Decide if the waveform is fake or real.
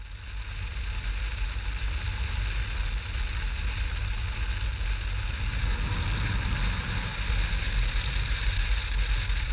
real